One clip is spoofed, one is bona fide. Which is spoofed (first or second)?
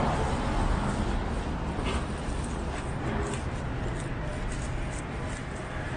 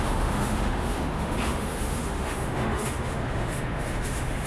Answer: second